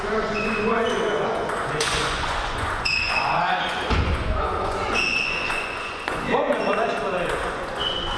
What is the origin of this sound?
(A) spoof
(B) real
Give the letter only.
A